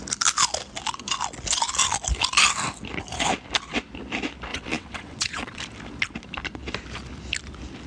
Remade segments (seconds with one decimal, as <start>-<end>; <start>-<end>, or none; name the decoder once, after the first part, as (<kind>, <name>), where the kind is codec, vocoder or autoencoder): 4.5-5.6 (vocoder, WaveNeXt)